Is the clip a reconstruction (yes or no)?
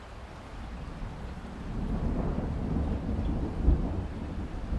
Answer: no